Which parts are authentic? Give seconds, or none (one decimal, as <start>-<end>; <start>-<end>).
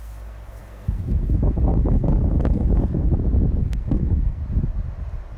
3.1-3.6; 4.4-5.4